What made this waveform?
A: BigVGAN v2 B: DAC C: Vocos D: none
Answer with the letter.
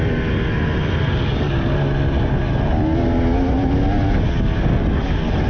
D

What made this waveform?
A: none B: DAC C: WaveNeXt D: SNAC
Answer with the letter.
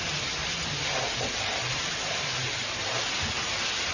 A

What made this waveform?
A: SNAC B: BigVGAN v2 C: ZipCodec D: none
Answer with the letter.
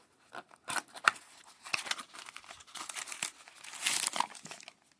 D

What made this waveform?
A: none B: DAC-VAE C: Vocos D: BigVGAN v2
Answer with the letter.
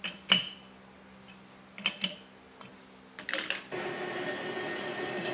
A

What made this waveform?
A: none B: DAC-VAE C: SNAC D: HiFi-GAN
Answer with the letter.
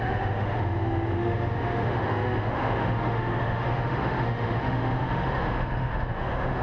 B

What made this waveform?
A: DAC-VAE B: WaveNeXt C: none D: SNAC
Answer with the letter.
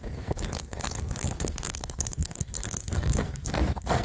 D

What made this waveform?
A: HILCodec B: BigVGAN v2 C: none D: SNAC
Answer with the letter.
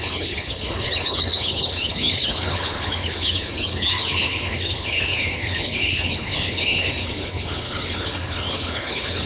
A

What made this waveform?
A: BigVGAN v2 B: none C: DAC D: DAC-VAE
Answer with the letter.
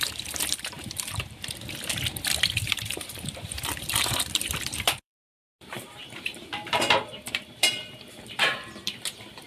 A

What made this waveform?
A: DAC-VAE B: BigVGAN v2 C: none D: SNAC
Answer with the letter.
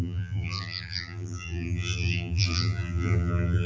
B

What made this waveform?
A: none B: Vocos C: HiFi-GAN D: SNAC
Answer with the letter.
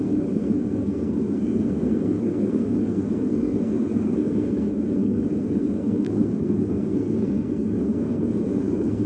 D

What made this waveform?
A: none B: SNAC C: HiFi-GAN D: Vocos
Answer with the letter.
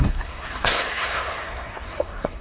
B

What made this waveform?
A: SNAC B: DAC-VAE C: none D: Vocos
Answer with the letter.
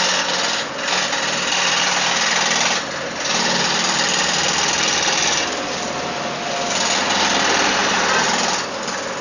C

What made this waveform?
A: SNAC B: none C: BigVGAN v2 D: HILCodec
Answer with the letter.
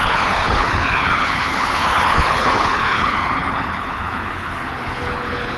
D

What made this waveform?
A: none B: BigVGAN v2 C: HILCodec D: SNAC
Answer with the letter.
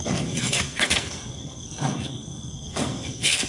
D